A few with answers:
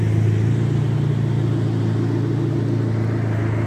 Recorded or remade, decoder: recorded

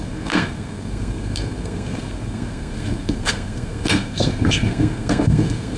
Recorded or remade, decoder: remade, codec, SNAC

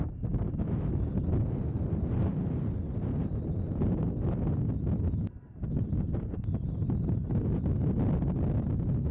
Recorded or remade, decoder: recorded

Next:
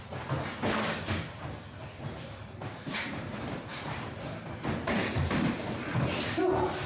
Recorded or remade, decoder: recorded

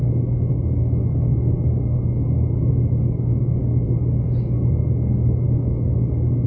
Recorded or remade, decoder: remade, codec, DAC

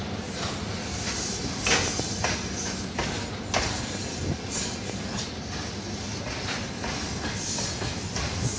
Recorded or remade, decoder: recorded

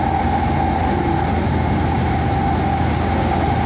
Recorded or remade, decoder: recorded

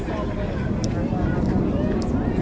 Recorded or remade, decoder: recorded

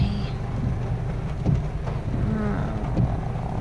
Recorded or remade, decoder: recorded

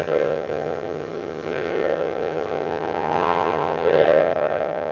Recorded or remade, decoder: remade, vocoder, HiFi-GAN